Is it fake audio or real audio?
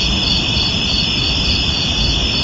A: real